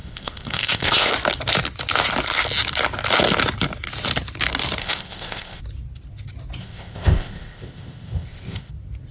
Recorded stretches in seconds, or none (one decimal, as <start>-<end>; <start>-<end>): 1.1-4.8; 5.6-6.6; 8.7-9.1